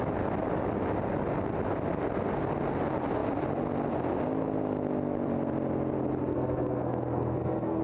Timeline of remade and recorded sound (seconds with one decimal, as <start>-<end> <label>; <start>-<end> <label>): 0.0-6.2 recorded; 6.2-7.8 remade